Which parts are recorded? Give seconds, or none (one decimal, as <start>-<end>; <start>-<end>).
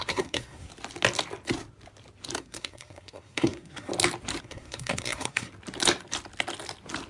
0.7-2.4; 3.9-4.4; 5.5-7.1